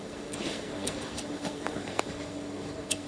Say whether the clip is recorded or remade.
remade